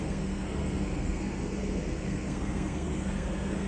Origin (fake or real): fake